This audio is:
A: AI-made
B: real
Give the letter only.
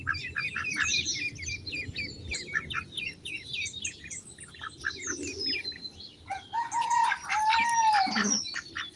B